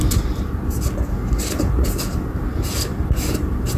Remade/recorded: recorded